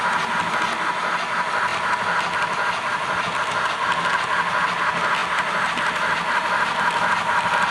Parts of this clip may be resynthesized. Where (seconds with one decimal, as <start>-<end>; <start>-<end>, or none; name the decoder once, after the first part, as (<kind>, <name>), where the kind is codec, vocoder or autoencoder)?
1.7-3.4 (vocoder, BigVGAN v2); 5.2-7.7